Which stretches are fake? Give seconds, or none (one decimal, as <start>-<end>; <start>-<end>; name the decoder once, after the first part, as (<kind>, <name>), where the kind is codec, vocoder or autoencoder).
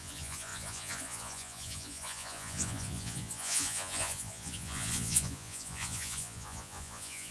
0.0-7.3 (vocoder, Vocos)